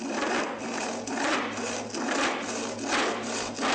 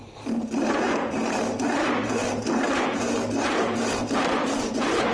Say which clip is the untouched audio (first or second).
first